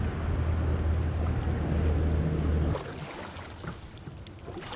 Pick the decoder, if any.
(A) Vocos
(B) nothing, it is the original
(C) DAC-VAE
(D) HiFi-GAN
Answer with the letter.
B